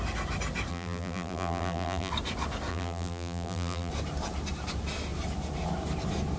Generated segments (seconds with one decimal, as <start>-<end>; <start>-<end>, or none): 0.7-2.1; 2.7-3.9